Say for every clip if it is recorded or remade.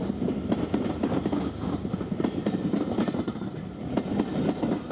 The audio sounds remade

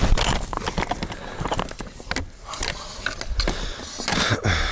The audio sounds recorded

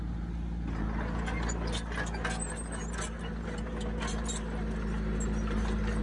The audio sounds recorded